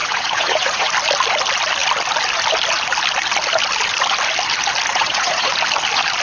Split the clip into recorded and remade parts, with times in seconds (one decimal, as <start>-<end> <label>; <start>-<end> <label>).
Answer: 0.0-0.9 remade; 0.9-4.9 recorded; 4.9-5.5 remade; 5.5-6.2 recorded